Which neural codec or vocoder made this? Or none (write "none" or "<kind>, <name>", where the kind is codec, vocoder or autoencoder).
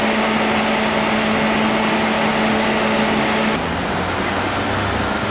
none